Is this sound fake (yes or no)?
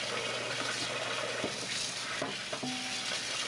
no